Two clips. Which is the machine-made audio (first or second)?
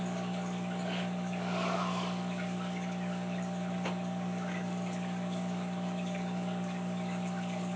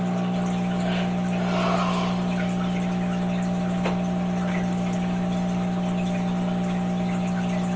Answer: first